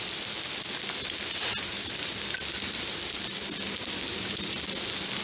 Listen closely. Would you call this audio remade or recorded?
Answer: recorded